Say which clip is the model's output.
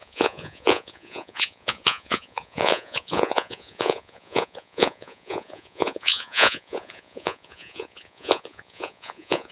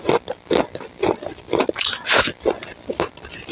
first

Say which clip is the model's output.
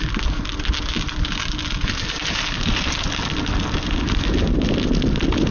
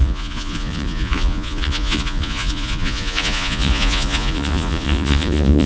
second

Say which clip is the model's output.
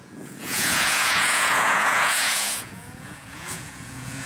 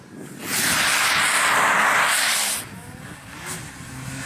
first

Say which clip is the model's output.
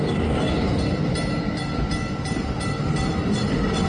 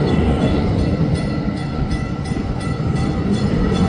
second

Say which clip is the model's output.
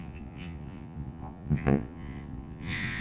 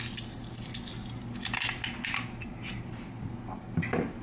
first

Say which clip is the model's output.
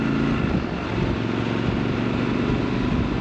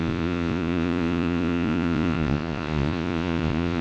second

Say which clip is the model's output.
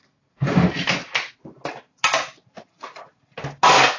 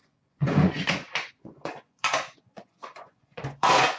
second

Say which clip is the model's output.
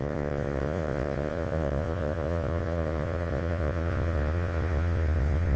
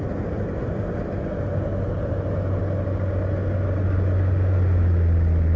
first